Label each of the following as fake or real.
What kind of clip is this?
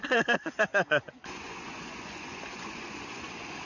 fake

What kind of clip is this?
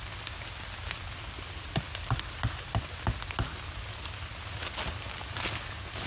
real